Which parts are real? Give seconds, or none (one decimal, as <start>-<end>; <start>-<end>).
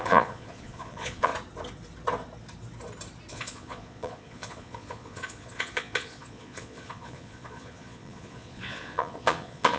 1.3-3.3